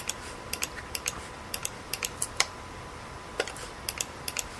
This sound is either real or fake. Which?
real